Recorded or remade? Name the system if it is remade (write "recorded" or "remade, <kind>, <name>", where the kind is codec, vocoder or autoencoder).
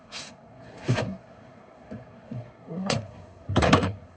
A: remade, codec, SNAC